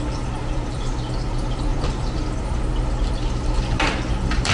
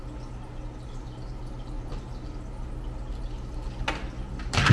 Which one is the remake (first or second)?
first